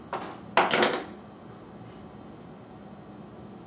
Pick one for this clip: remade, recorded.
recorded